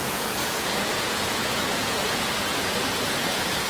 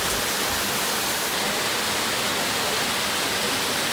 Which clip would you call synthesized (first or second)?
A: first